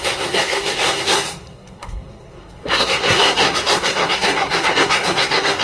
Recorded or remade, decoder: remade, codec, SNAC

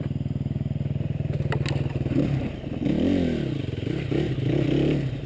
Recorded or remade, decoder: recorded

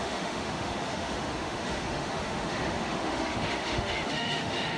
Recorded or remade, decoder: remade, autoencoder, DAC-VAE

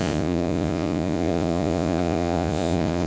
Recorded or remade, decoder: remade, vocoder, Vocos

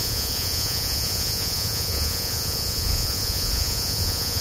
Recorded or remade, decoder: remade, vocoder, Vocos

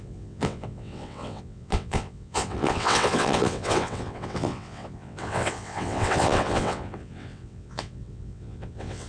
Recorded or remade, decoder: remade, vocoder, WaveNeXt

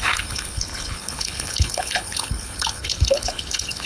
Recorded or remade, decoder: remade, codec, HILCodec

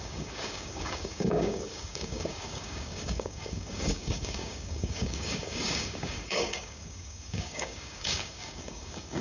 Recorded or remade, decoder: remade, codec, DAC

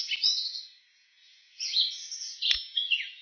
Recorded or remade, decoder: recorded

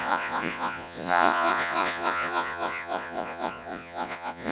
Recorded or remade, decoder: remade, vocoder, Vocos